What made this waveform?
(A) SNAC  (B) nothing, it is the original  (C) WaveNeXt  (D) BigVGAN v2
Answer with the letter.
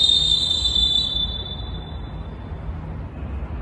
B